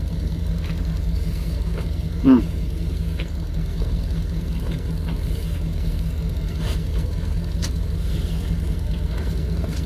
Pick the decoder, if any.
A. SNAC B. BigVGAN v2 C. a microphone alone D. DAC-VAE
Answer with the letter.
A